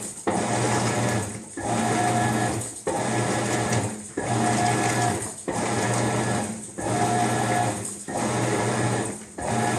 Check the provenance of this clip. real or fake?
real